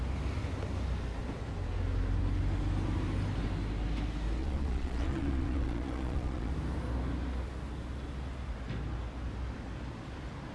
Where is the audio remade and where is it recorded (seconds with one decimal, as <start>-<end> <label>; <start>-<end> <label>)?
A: 0.0-4.4 recorded; 4.4-6.5 remade; 6.5-10.5 recorded